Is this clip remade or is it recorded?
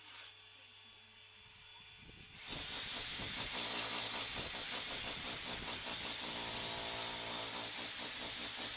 recorded